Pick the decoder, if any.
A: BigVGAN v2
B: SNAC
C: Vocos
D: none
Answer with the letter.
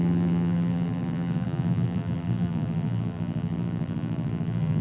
A